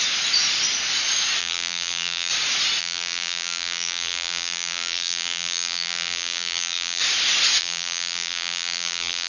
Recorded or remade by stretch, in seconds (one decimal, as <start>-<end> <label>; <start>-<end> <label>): 0.0-1.4 recorded; 1.4-2.3 remade; 2.3-2.8 recorded; 2.8-7.0 remade; 7.0-7.6 recorded; 7.6-9.3 remade